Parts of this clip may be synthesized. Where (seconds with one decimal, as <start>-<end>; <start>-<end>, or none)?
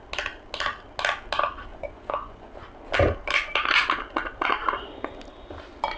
1.7-2.5